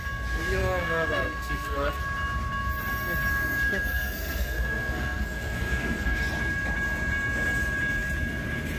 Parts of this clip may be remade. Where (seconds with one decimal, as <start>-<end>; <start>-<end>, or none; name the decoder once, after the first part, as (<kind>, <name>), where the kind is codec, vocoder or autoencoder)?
0.6-2.0 (codec, SNAC); 3.3-6.2